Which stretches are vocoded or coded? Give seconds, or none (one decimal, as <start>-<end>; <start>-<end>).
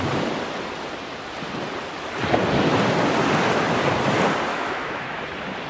4.5-5.2